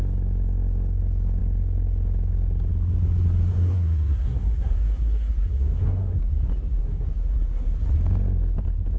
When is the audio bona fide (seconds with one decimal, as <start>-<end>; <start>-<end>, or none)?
0.0-3.5; 6.3-6.8; 7.7-9.0